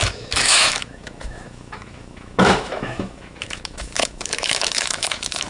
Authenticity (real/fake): fake